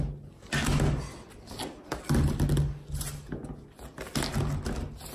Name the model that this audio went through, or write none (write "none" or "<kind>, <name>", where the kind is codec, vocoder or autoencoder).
none